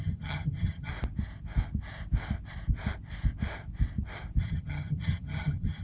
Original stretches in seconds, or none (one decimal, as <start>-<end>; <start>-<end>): 0.9-4.4